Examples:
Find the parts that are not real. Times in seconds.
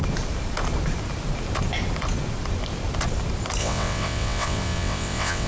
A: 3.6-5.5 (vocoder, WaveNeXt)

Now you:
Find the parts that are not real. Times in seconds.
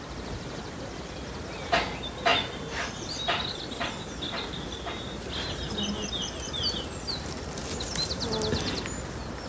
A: none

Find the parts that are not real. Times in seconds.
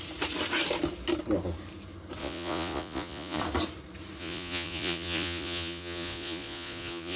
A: 2.2-3.4 (vocoder, Vocos); 4.2-7.2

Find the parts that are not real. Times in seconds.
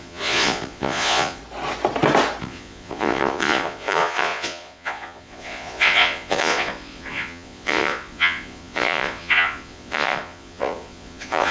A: 0.0-1.4 (vocoder, Vocos); 2.4-11.5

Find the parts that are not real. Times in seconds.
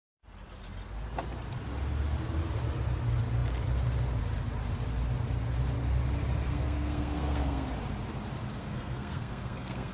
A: 6.5-7.7 (codec, SNAC); 8.6-9.9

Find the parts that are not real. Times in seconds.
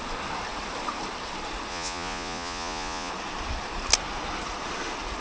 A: 1.7-3.1 (vocoder, Vocos)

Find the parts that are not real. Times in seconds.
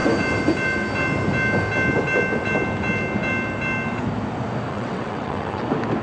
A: 4.7-5.6 (vocoder, WaveNeXt)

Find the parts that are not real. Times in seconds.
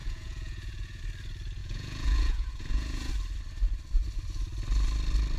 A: 0.0-1.0 (vocoder, Vocos); 1.6-3.1